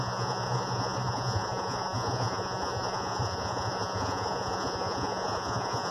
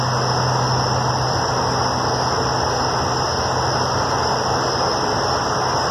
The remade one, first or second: first